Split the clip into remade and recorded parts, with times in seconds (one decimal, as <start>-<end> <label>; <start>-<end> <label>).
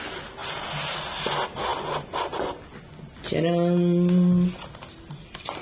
0.0-5.6 recorded